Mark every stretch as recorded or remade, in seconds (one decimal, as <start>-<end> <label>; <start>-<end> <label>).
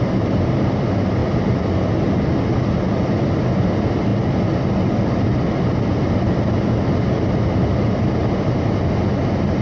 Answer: 0.0-9.6 recorded